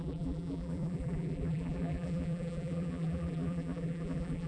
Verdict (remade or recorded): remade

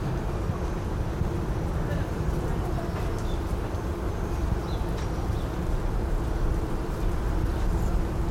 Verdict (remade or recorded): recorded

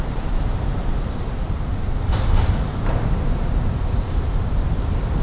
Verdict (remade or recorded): remade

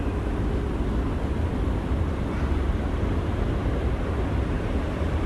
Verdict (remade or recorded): recorded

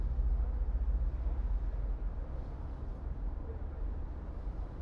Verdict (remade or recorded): recorded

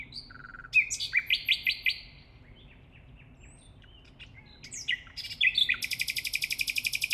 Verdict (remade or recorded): recorded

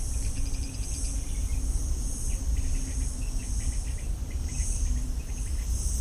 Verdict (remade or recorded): remade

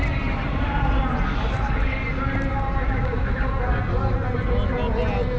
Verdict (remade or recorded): recorded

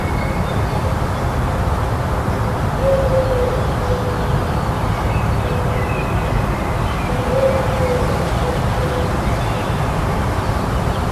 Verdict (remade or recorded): remade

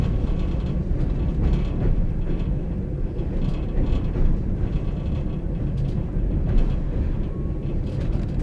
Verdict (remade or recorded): remade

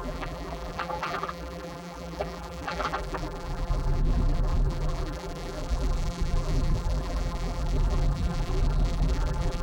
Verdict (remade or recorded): remade